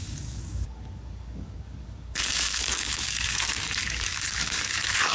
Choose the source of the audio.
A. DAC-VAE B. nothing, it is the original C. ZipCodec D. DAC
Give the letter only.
D